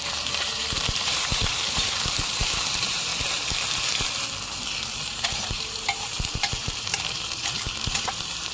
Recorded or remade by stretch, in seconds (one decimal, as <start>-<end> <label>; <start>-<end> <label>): 0.0-3.1 remade; 3.1-4.9 recorded; 4.9-8.5 remade